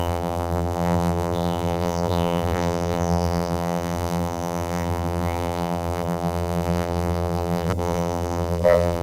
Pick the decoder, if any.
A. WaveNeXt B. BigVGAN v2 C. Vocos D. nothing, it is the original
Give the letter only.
B